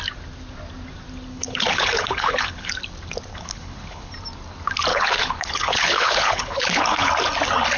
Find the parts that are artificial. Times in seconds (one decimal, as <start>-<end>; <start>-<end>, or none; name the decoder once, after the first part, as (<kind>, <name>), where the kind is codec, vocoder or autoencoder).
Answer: 1.3-2.7 (codec, HILCodec); 3.3-4.1; 4.9-7.1